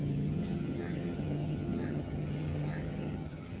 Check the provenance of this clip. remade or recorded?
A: remade